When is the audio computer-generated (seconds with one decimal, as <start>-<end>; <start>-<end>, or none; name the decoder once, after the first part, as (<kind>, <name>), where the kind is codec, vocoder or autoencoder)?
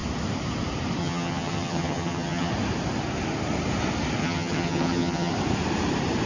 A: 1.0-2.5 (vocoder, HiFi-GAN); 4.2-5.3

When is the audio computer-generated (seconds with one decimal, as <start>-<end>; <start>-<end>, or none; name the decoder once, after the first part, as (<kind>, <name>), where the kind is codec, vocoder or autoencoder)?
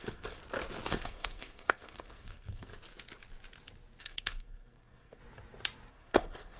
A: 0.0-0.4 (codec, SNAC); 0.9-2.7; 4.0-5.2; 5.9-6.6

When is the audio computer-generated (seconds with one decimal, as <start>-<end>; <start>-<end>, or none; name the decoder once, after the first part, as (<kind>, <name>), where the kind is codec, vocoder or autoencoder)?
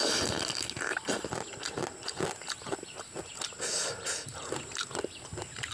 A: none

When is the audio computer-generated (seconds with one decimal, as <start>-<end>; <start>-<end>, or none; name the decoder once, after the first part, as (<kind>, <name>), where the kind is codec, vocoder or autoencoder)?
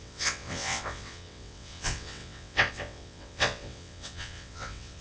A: 0.0-5.0 (vocoder, WaveNeXt)